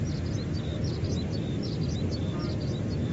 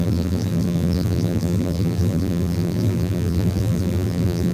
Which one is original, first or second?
first